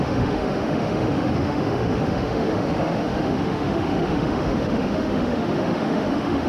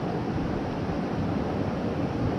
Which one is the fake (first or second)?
first